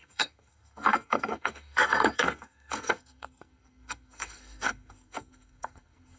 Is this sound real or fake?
fake